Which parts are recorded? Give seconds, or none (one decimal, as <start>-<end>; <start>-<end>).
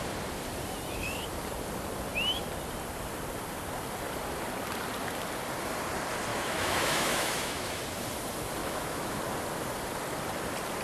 0.0-6.3; 7.8-8.6; 9.2-10.8